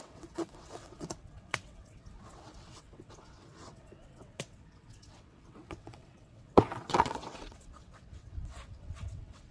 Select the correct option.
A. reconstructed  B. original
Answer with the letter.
A